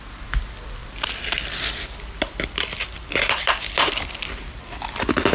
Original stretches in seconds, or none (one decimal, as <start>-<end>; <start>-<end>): 0.0-5.3